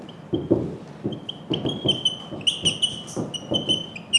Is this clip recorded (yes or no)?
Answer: yes